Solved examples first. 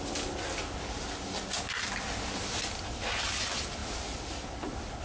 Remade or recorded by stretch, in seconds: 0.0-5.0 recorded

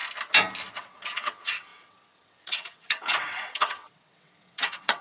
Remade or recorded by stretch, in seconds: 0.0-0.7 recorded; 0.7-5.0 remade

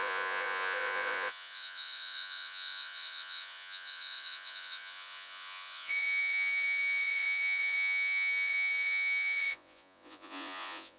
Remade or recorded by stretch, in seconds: 0.0-11.0 remade